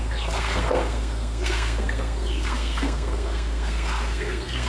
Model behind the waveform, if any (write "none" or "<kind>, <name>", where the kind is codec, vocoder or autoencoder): codec, SNAC